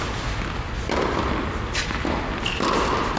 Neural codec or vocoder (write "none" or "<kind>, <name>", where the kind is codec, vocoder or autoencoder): none